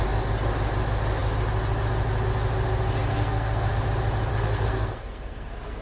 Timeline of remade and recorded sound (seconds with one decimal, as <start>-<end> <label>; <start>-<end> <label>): 0.0-3.1 recorded; 3.1-3.7 remade; 3.7-4.3 recorded; 4.3-5.8 remade